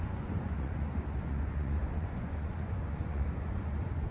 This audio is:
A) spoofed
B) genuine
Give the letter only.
A